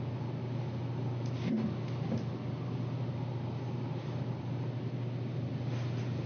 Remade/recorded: recorded